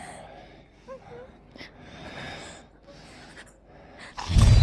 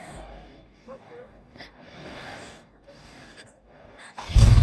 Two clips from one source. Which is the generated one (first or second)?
second